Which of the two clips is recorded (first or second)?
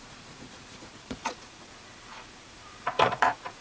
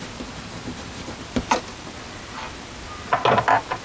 second